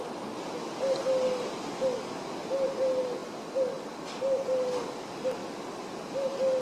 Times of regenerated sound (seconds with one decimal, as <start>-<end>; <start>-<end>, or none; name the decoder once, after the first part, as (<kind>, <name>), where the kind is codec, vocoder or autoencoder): none